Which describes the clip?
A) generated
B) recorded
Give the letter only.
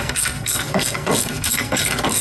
A